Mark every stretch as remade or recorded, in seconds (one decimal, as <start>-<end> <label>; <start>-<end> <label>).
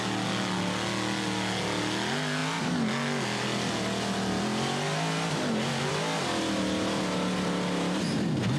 0.0-8.6 recorded